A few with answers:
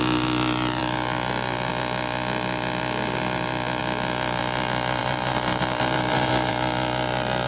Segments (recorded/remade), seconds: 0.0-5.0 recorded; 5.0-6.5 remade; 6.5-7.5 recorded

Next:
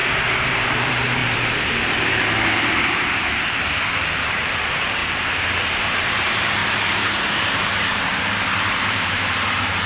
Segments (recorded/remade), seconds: 0.0-0.5 recorded; 0.5-5.0 remade; 5.0-5.8 recorded; 5.8-6.6 remade; 6.6-7.2 recorded; 7.2-9.9 remade

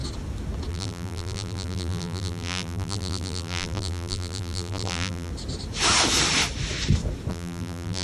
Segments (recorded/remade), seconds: 0.0-0.7 recorded; 0.7-5.3 remade; 5.3-7.3 recorded; 7.3-8.0 remade